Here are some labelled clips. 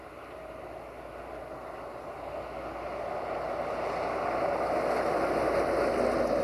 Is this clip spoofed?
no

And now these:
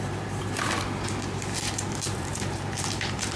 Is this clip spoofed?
yes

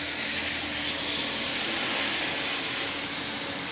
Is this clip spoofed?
no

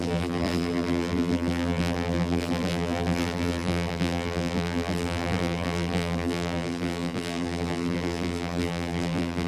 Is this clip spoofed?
yes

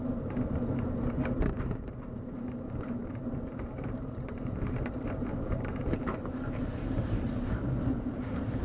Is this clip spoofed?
yes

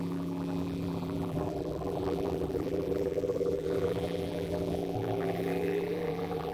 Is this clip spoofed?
yes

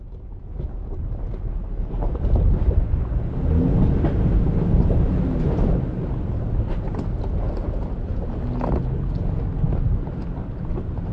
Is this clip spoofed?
no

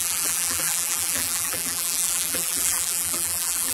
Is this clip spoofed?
yes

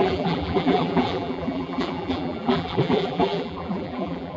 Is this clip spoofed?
yes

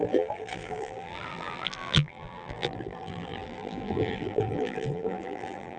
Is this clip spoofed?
yes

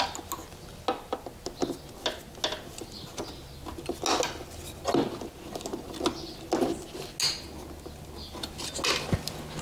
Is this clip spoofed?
no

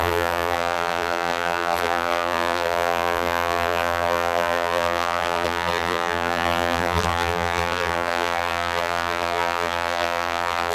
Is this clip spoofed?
yes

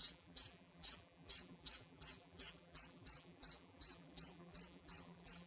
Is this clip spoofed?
yes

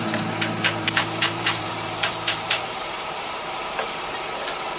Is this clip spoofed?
yes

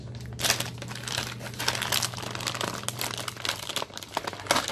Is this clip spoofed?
no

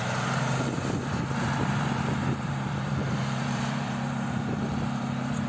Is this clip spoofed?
yes